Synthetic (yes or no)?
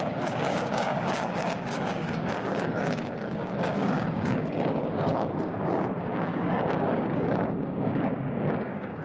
yes